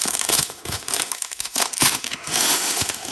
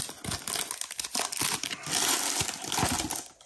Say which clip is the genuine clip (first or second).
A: second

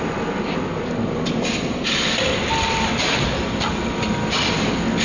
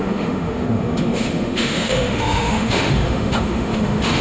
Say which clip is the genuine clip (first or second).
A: first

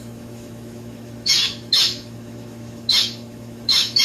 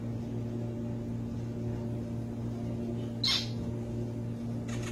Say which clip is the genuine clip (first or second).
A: second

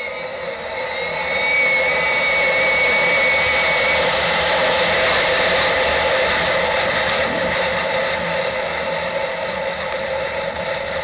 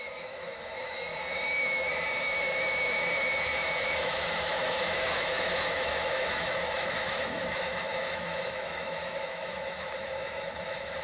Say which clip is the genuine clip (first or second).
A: first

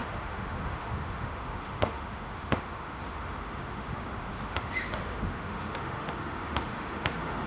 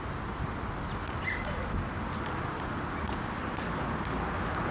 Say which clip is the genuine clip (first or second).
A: second